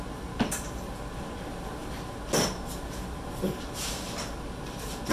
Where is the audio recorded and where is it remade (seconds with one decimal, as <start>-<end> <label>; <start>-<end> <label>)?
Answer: 0.0-5.1 recorded